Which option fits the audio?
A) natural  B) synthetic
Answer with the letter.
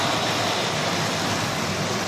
A